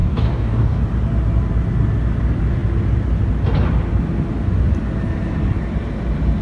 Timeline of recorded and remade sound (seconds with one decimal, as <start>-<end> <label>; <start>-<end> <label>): 0.0-0.8 remade; 0.8-6.4 recorded